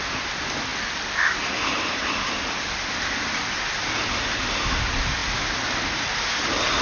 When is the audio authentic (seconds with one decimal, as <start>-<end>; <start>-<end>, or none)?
0.0-6.8